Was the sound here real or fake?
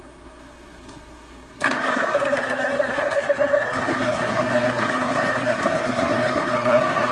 fake